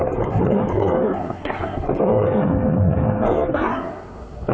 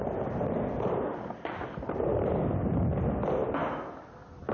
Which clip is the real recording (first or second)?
second